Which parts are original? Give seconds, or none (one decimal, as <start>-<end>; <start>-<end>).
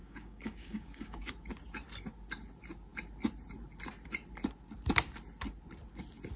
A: 1.3-6.4